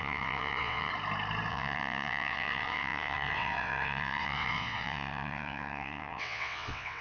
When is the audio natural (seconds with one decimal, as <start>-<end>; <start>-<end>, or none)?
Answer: 0.9-1.5